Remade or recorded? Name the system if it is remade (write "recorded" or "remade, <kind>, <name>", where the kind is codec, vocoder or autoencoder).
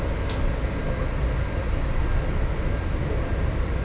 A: recorded